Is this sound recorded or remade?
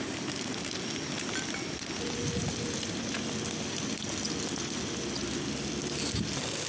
recorded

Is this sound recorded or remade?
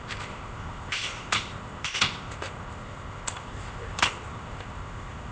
remade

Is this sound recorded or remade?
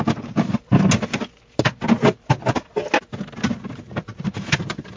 recorded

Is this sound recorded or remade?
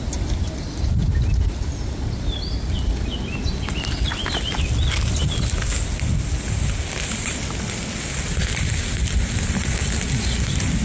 recorded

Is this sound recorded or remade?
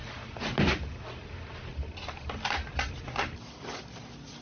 recorded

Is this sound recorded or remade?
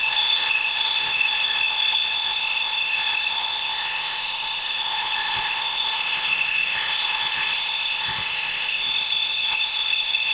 remade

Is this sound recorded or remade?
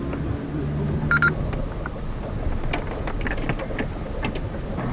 recorded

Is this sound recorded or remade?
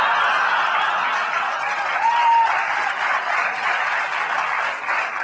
recorded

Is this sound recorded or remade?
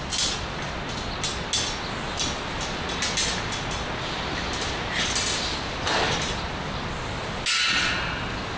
recorded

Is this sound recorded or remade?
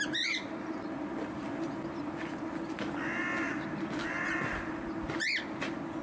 recorded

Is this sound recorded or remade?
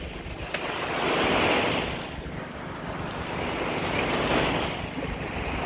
recorded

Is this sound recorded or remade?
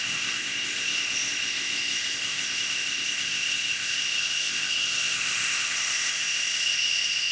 remade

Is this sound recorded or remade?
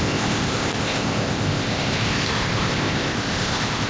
remade